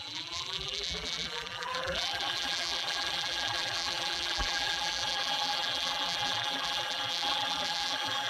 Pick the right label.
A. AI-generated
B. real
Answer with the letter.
A